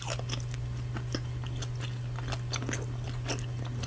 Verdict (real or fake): real